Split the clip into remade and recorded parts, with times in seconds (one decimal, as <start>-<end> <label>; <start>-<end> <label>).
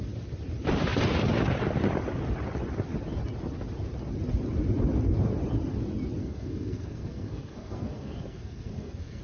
0.0-6.2 recorded; 6.2-9.2 remade